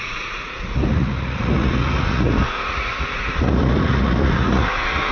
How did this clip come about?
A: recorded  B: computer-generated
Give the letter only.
B